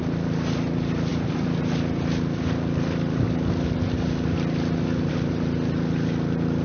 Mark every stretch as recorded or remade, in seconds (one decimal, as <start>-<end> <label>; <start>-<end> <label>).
0.0-6.6 recorded